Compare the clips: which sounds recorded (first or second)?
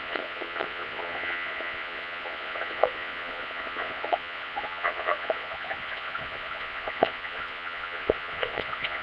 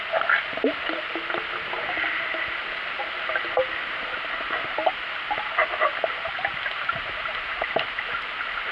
second